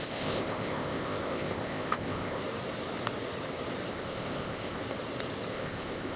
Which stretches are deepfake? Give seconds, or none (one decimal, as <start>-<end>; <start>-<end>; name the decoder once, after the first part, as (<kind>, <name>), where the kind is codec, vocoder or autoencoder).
0.0-2.4 (codec, ZipCodec); 3.9-4.8; 5.5-6.2